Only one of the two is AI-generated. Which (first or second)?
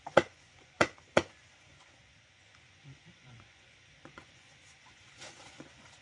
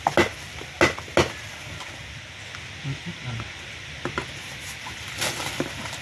first